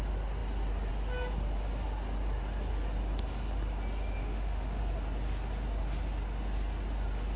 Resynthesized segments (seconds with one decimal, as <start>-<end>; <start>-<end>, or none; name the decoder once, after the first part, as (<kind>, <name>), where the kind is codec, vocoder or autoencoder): 4.2-4.8 (autoencoder, DAC-VAE)